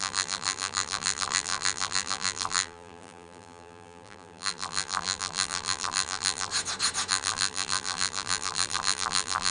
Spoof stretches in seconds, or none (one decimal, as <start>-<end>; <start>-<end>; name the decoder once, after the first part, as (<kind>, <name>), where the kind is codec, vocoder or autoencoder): 0.0-6.5 (vocoder, BigVGAN v2); 7.1-9.5